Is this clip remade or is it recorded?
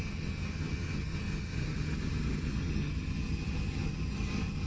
remade